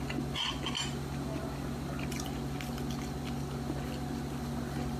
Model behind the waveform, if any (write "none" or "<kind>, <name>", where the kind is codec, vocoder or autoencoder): none